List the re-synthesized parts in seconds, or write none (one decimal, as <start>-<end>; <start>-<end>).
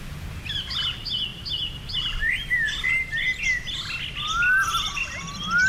none